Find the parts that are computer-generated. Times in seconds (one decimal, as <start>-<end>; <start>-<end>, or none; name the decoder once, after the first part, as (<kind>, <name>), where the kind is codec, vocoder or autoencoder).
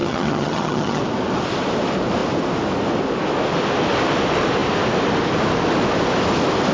0.0-1.0 (vocoder, HiFi-GAN)